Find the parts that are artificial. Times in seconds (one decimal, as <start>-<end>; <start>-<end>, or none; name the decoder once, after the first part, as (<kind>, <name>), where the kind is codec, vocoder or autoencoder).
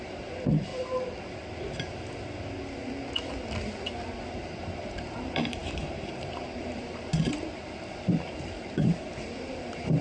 0.0-0.7 (vocoder, BigVGAN v2); 4.3-10.0